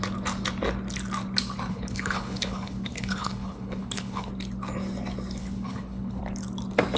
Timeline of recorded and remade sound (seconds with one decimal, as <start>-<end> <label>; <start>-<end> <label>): 0.0-1.7 recorded; 1.7-4.3 remade; 4.3-5.4 recorded; 5.4-6.2 remade; 6.2-7.0 recorded